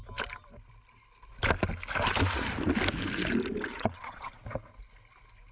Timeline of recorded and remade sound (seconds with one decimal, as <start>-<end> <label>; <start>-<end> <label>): 0.0-3.7 recorded; 3.7-4.3 remade; 4.3-5.5 recorded